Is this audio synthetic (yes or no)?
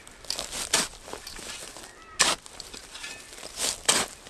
no